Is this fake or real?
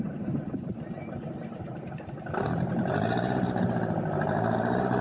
fake